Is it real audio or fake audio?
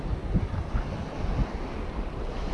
real